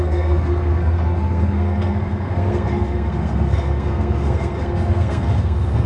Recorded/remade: remade